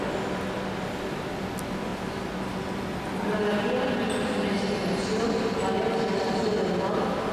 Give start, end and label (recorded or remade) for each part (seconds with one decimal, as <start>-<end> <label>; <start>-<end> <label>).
0.0-7.3 recorded